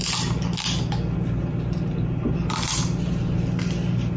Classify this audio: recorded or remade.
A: recorded